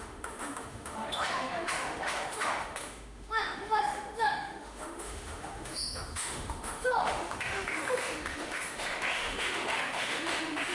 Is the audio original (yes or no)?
no